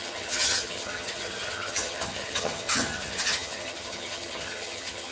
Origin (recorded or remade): remade